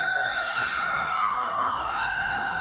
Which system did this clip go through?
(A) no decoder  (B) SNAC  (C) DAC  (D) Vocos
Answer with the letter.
B